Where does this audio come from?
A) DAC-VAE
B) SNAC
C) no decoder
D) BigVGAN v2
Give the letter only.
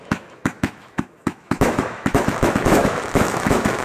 A